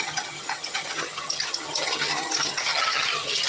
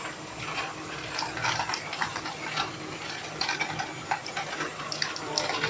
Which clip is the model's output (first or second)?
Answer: first